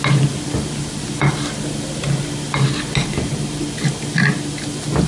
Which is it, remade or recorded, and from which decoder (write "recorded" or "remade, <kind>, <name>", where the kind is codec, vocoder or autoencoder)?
recorded